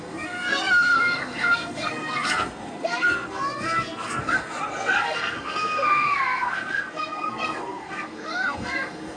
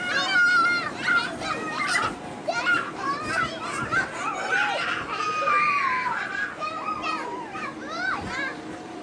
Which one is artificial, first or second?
first